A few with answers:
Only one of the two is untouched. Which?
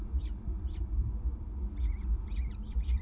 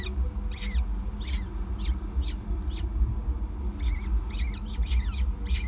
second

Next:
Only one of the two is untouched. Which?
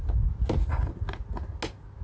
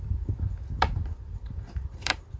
first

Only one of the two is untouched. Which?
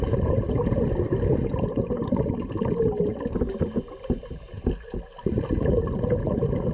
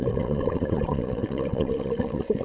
first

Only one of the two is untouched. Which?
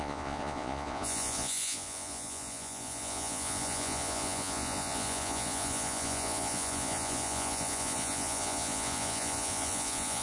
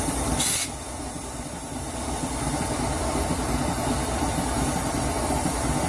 second